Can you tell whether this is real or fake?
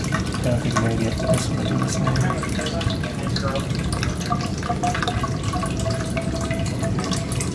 real